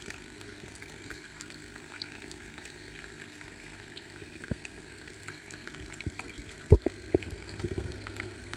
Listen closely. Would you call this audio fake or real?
fake